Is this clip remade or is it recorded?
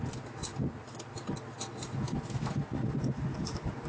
recorded